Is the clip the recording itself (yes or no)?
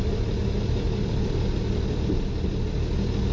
yes